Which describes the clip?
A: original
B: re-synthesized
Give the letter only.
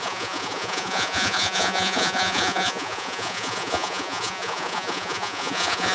B